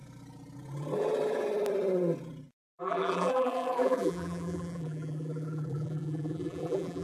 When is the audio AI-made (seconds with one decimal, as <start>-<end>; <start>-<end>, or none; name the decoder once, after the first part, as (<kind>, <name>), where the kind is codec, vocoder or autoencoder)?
2.8-7.0 (vocoder, BigVGAN v2)